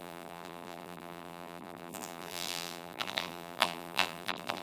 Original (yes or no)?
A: no